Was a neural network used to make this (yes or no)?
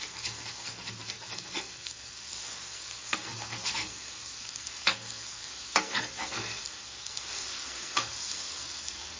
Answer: yes